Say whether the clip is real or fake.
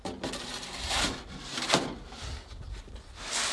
real